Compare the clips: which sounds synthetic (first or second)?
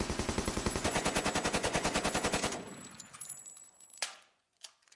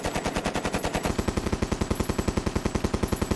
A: first